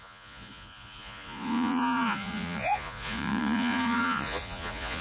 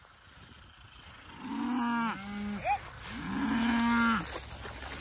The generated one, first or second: first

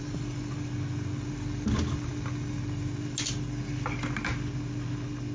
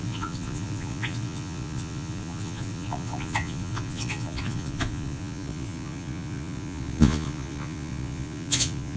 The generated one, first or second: second